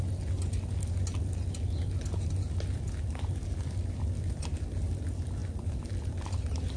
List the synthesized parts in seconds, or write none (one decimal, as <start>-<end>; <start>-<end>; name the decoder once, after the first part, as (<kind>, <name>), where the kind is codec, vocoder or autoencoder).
none